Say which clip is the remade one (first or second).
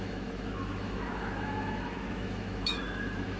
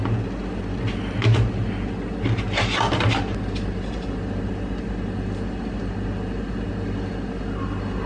first